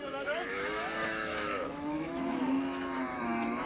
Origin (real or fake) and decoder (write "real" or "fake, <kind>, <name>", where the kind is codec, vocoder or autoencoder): fake, autoencoder, DAC-VAE